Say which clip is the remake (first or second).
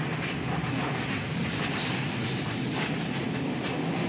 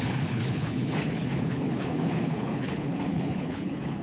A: second